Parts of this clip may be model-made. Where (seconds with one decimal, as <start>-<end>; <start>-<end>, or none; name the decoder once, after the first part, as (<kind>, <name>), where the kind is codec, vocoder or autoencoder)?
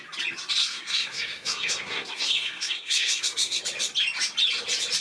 0.6-3.6 (codec, SNAC)